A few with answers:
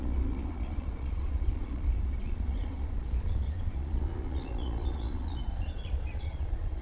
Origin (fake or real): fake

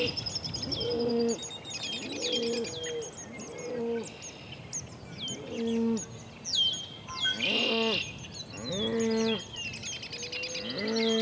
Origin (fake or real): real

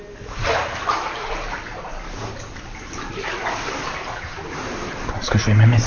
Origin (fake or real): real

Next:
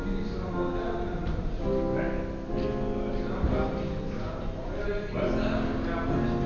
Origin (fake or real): real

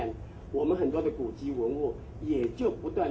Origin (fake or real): real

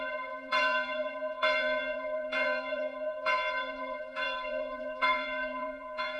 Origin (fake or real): fake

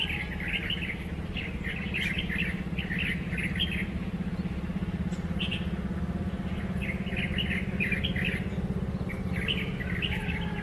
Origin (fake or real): real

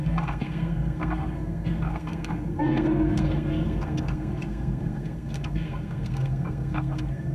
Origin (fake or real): fake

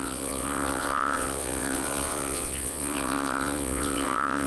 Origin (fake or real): fake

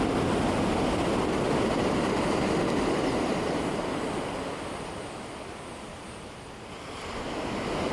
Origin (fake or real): real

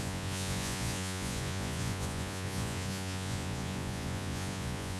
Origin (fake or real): fake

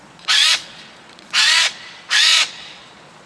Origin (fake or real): fake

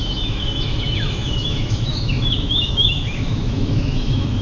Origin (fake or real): fake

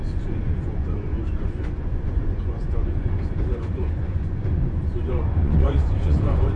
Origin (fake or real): fake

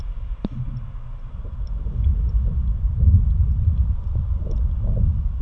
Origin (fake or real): real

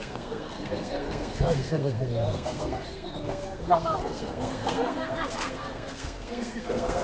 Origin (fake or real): fake